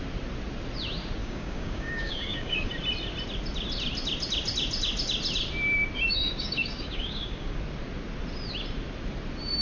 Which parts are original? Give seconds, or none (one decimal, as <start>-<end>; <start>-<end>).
0.0-1.2; 2.7-6.1; 7.6-9.6

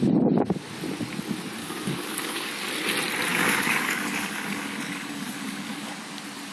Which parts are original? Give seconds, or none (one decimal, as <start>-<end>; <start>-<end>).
0.0-1.6; 2.5-3.3; 5.9-6.5

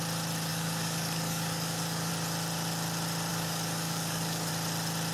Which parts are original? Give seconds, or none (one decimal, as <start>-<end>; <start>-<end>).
0.0-0.5; 2.1-3.3; 4.5-5.1

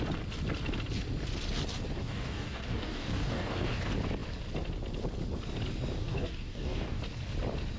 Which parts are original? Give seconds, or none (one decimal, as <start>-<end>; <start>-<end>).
0.0-2.0; 3.8-6.0; 7.0-7.8

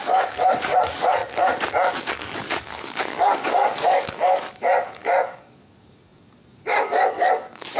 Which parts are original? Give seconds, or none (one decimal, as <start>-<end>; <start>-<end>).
1.2-2.1

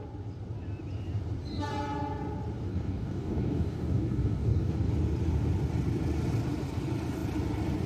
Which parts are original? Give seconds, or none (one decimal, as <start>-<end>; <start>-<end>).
0.0-2.7; 4.9-7.9

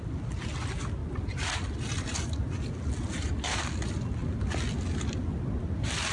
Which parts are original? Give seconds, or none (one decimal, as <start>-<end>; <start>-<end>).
0.0-6.1